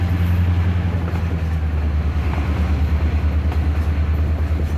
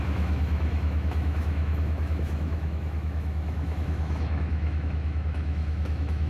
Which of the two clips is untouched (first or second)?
first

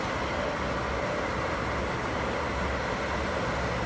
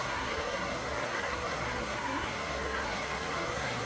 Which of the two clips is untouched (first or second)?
first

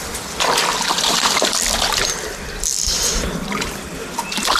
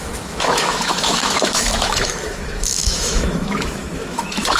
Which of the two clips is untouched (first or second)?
first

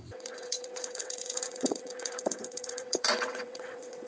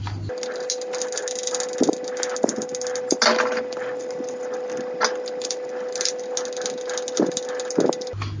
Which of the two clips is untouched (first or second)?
second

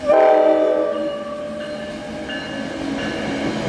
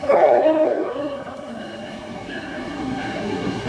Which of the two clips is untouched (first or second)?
first